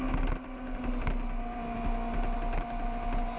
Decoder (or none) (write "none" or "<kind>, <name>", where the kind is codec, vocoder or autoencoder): none